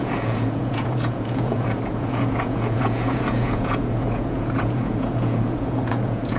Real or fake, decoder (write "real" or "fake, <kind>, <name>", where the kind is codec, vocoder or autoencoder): fake, vocoder, Vocos